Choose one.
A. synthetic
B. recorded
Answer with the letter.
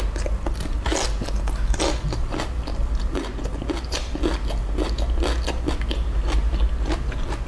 B